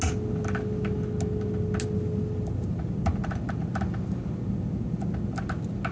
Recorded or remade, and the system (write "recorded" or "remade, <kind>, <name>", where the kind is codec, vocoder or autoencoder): recorded